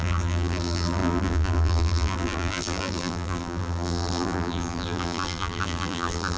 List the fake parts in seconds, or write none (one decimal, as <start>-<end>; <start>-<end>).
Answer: 0.0-6.4